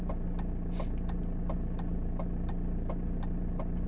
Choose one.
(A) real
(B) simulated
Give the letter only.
A